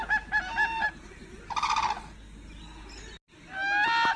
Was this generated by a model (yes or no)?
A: no